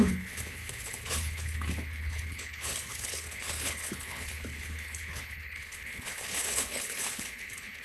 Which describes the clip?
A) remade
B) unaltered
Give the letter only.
A